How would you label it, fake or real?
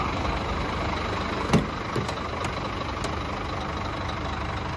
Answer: real